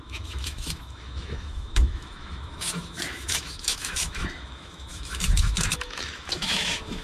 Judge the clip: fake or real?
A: fake